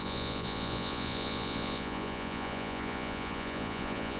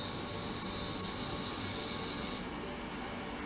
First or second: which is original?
second